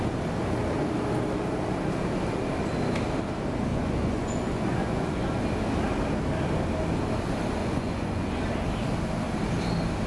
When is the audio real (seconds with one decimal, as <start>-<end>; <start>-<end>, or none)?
0.0-3.7; 5.4-7.6; 8.4-10.1